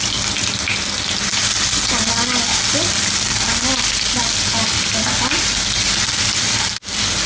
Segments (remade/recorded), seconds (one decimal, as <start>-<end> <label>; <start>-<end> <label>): 0.0-7.3 recorded